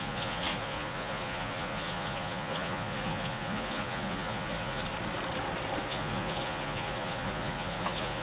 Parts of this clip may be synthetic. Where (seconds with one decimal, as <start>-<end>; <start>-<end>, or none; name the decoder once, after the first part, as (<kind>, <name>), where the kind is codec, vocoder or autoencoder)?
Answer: 0.0-4.8 (vocoder, Vocos); 5.8-8.2